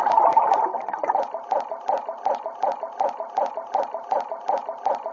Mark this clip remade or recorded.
recorded